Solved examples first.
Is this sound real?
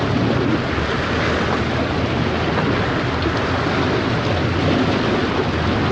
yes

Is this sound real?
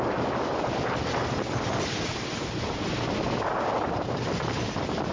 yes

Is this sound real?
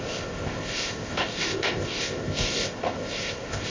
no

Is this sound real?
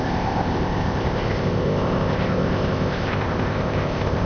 no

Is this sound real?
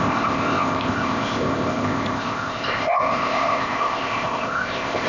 no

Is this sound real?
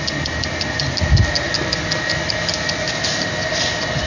yes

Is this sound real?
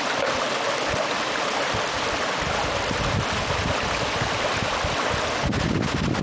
yes